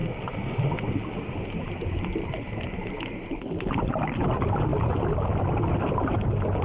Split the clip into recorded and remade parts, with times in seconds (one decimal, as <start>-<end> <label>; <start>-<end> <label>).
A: 0.0-6.6 recorded